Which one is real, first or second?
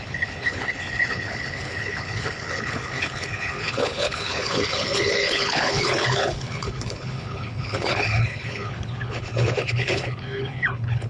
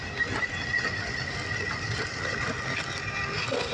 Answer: second